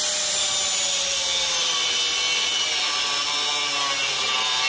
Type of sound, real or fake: real